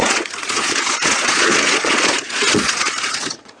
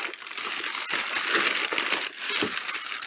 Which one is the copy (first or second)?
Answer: first